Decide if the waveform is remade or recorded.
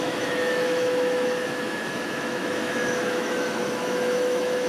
remade